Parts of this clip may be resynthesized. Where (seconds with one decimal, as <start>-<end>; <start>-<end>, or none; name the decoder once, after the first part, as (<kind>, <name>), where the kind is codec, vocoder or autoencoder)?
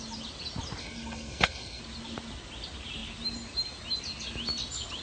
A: 0.8-1.8 (codec, SNAC)